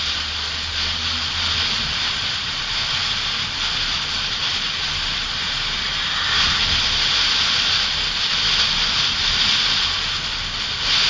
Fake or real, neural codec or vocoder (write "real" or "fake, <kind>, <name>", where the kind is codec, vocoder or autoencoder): real